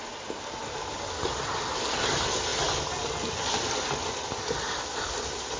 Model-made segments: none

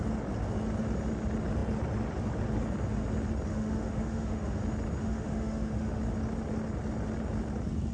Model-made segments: 3.5-4.6 (autoencoder, DAC-VAE); 5.0-6.0